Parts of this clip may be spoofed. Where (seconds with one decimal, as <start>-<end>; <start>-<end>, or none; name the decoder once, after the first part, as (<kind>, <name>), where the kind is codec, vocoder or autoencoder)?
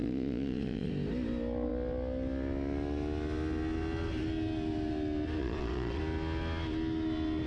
0.0-0.9 (vocoder, Vocos); 5.4-6.0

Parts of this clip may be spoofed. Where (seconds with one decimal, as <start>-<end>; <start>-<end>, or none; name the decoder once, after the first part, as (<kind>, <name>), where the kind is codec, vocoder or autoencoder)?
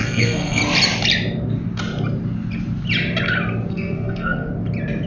0.0-0.6 (codec, SNAC); 3.7-4.5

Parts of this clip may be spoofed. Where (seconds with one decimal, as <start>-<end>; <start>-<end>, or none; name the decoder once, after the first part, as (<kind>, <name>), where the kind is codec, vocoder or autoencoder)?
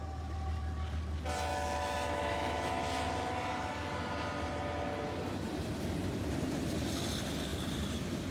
1.5-2.7 (autoencoder, DAC-VAE)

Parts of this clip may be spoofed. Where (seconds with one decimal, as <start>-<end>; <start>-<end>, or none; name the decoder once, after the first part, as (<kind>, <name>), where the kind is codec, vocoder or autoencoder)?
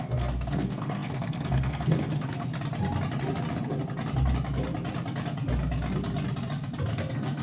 0.0-2.5 (codec, SNAC); 6.9-7.4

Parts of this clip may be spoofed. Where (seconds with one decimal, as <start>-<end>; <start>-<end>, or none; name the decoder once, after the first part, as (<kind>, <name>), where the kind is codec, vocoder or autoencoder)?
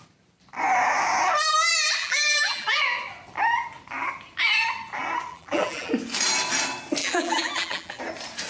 2.0-2.8 (vocoder, BigVGAN v2); 5.3-5.9; 7.0-8.0